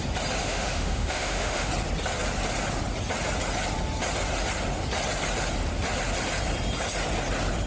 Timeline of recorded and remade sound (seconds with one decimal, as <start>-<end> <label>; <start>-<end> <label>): 0.0-0.4 recorded; 0.4-1.7 remade; 1.7-7.7 recorded